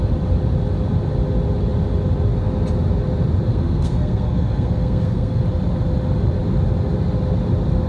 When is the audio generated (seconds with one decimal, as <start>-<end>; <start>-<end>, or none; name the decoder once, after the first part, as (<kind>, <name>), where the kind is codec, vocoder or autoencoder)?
3.5-5.4 (codec, SNAC)